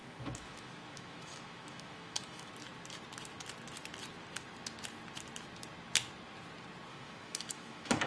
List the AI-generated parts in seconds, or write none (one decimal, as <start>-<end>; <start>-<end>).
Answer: 0.0-2.5; 6.9-8.1